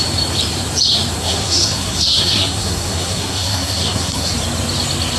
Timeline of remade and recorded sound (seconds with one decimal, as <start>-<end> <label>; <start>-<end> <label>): 0.0-1.2 recorded; 1.2-4.3 remade; 4.3-5.2 recorded